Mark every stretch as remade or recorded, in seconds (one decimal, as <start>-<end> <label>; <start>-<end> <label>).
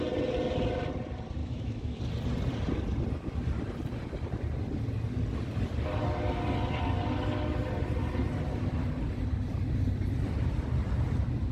0.0-1.4 recorded; 1.4-2.0 remade; 2.0-11.5 recorded